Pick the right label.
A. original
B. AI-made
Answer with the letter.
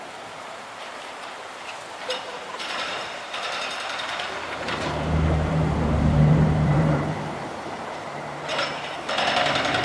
B